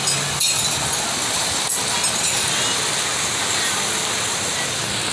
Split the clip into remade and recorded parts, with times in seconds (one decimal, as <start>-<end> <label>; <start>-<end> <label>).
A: 0.0-5.1 recorded